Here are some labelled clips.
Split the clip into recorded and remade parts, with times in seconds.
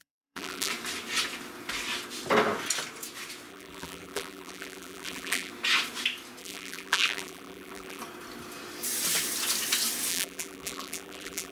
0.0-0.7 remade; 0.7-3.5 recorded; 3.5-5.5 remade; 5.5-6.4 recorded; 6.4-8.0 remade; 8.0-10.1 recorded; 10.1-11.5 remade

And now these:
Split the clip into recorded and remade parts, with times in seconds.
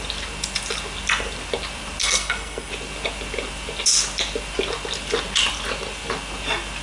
0.0-2.0 recorded; 2.0-2.7 remade; 2.7-6.8 recorded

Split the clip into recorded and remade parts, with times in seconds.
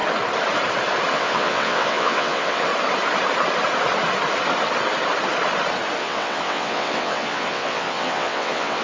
0.0-1.1 recorded; 1.1-2.7 remade; 2.7-6.0 recorded; 6.0-8.8 remade